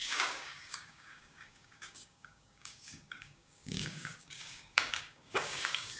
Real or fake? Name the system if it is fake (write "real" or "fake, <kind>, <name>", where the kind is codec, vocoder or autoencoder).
fake, codec, DAC